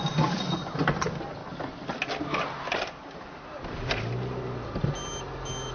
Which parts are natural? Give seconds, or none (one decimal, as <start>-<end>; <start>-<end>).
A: 0.0-5.7